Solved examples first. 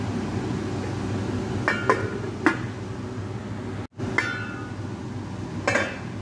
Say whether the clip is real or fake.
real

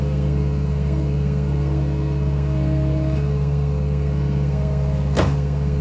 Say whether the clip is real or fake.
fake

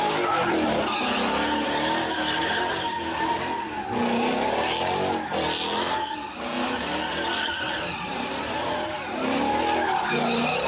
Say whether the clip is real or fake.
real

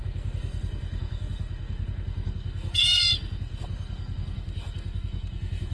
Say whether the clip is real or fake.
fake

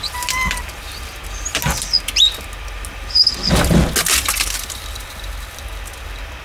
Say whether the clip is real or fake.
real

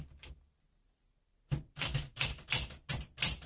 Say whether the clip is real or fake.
real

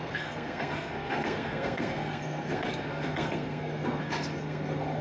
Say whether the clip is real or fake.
fake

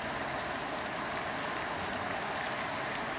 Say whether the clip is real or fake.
real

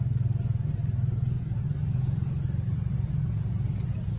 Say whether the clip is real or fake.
real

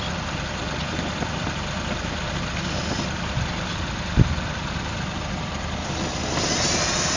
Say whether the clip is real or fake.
real